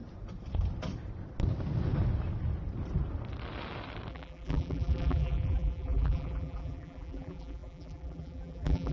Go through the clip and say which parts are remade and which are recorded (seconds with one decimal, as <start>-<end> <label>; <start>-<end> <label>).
0.0-4.1 recorded; 4.1-8.9 remade